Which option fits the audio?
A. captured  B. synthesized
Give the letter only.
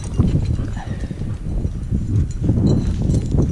A